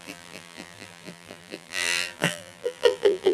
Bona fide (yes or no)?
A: no